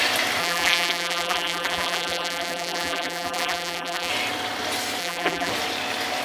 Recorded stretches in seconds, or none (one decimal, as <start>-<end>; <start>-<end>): 0.0-0.4; 4.1-5.0; 5.5-6.2